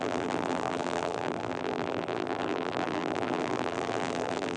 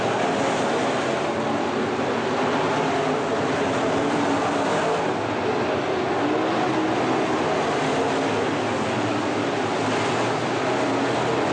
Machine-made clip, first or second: first